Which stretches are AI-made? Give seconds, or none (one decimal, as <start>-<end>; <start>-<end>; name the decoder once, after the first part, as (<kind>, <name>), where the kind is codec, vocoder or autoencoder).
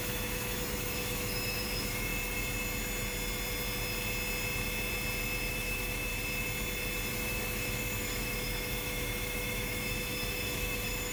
0.0-2.1 (autoencoder, DAC-VAE); 5.5-6.1; 7.1-11.1